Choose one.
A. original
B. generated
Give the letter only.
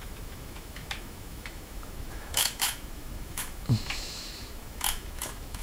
B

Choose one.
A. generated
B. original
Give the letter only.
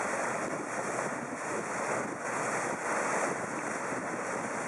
B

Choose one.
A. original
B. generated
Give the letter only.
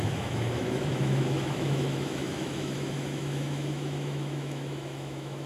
B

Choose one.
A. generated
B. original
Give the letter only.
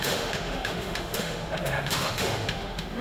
A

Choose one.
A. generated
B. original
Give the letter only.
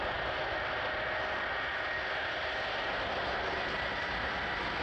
B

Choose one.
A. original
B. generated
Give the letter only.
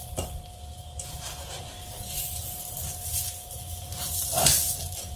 A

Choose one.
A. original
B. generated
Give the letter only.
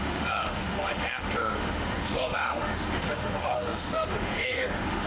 B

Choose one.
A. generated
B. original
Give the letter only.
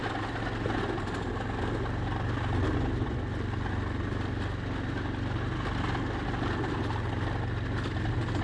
B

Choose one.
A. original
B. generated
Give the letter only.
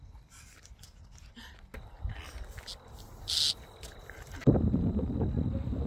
A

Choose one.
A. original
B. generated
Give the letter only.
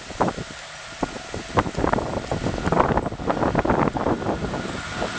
A